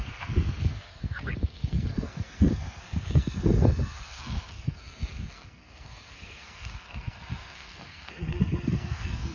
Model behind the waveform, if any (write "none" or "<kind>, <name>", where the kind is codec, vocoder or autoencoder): codec, SNAC